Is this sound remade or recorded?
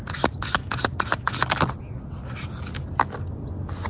recorded